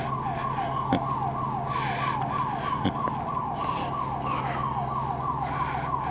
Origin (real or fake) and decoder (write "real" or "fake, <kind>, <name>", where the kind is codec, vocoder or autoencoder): real